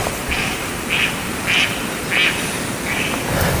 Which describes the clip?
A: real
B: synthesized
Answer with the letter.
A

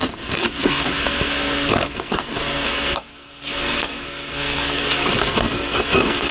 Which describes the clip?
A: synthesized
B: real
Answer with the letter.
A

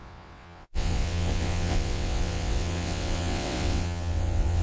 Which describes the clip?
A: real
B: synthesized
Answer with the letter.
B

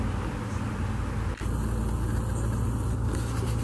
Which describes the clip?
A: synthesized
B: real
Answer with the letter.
B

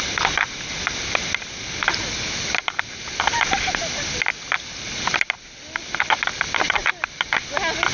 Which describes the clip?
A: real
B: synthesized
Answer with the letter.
A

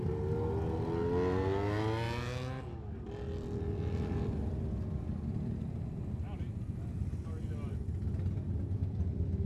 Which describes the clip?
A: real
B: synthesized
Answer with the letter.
A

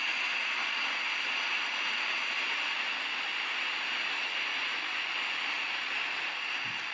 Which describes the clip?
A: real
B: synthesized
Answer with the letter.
A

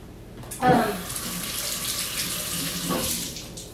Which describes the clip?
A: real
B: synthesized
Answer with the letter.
A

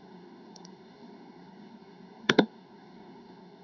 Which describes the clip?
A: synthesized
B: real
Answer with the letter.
A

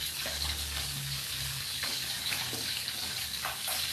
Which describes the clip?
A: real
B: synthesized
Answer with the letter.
B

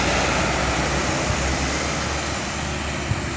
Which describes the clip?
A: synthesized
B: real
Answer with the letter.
B